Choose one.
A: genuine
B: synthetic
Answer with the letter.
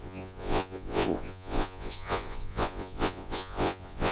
B